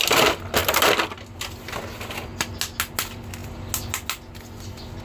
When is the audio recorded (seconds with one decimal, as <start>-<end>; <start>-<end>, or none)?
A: 0.0-5.0